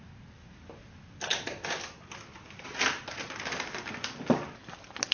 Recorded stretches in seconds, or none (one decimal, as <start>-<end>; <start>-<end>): 0.0-5.1